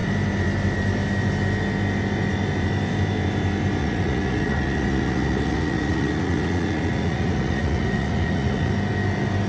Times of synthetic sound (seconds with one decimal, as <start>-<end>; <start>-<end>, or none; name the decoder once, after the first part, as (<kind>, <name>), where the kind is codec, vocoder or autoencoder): 3.8-8.7 (vocoder, Vocos)